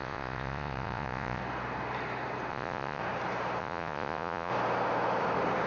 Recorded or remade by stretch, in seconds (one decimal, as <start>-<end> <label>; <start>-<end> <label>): 0.0-1.4 remade; 1.4-2.5 recorded; 2.5-3.0 remade; 3.0-3.6 recorded; 3.6-4.5 remade; 4.5-5.7 recorded